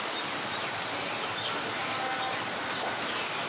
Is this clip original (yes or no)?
yes